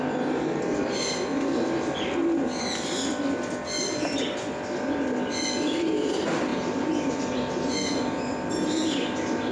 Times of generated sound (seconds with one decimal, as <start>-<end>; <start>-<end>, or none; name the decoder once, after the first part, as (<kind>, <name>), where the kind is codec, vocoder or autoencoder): none